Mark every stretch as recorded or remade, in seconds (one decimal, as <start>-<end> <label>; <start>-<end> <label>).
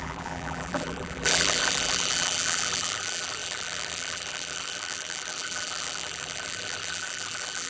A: 0.0-7.7 remade